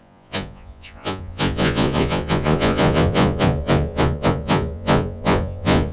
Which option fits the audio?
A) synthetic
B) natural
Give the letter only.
A